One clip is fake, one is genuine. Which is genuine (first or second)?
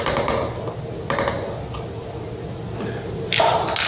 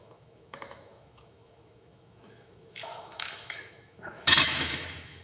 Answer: first